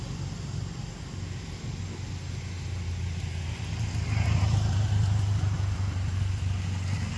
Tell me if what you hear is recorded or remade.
recorded